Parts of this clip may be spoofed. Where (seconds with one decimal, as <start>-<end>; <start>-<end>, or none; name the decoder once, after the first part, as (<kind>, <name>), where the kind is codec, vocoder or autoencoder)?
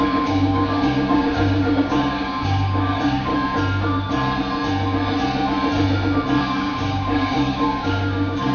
0.0-3.3 (codec, DAC); 6.4-8.5